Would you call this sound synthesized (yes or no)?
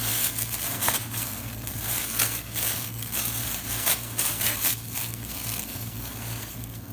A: yes